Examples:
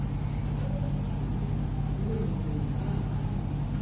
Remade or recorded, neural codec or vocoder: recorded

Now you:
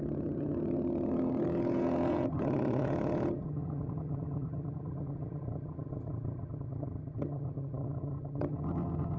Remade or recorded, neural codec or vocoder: remade, vocoder, HiFi-GAN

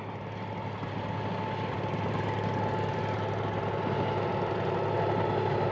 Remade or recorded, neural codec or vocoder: recorded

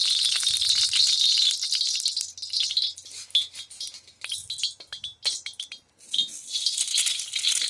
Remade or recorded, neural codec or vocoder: recorded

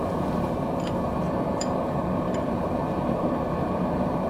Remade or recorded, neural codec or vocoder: remade, vocoder, BigVGAN v2